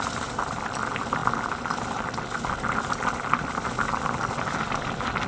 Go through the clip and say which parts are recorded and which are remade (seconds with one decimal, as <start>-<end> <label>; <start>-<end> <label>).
0.0-5.3 recorded